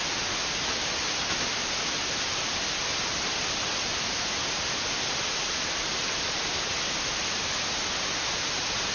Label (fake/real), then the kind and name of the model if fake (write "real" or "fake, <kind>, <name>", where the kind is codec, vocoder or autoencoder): real